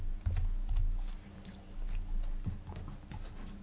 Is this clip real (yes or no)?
yes